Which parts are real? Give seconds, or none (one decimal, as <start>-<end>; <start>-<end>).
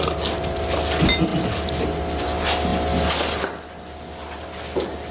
0.0-5.1